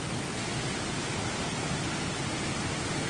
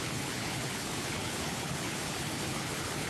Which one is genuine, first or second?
first